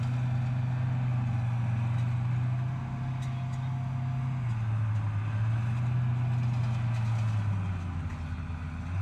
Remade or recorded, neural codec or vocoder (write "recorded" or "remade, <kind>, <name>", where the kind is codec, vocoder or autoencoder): recorded